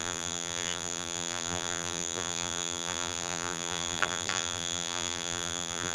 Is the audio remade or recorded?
remade